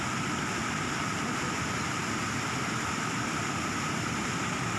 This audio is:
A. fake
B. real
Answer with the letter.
A